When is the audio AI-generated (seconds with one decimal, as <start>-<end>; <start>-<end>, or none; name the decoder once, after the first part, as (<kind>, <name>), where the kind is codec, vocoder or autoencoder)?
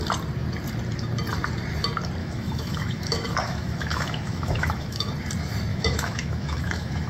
2.2-5.1 (autoencoder, DAC-VAE); 5.7-7.1